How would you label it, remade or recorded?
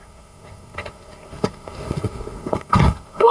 remade